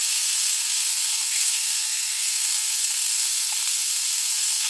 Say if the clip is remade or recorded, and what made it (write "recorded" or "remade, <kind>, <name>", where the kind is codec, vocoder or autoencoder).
remade, codec, SNAC